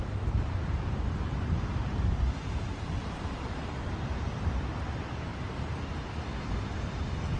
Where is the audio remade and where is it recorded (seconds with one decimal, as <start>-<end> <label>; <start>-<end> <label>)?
0.0-3.8 remade; 3.8-7.4 recorded